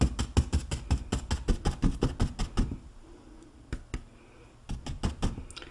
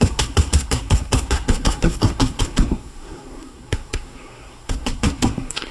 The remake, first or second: second